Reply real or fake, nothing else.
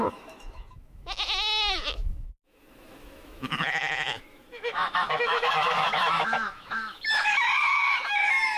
fake